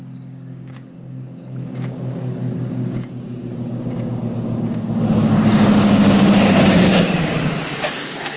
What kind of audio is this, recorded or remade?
remade